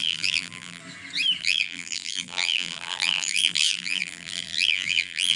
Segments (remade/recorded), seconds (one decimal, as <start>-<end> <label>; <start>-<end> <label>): 0.0-0.8 remade; 0.8-1.4 recorded; 1.4-5.4 remade